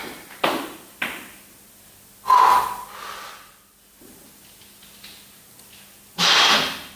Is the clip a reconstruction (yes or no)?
no